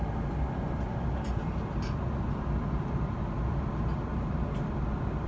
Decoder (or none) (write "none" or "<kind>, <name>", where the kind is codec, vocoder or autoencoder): none